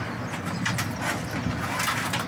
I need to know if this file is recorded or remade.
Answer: recorded